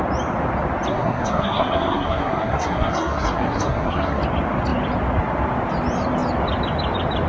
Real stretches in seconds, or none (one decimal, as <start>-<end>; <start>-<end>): 0.0-0.9; 4.2-7.3